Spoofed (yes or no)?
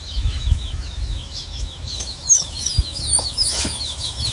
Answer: yes